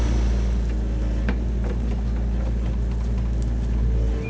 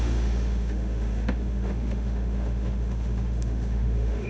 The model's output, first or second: second